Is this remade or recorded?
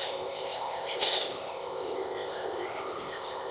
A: remade